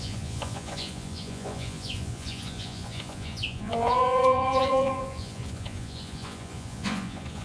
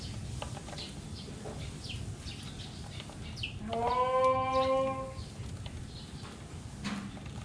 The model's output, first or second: first